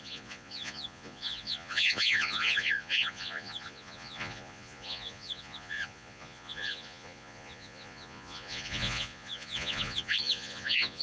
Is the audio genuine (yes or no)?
no